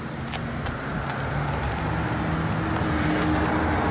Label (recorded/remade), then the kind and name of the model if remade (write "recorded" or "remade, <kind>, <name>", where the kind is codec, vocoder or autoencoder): recorded